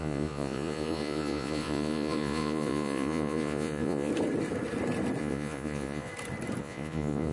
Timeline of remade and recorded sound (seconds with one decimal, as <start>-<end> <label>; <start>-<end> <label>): 0.0-4.1 remade; 4.1-5.2 recorded; 5.2-6.1 remade; 6.1-6.6 recorded; 6.6-7.3 remade